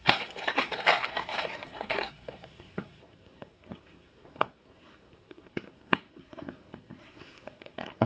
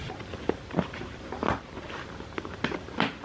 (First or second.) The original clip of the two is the second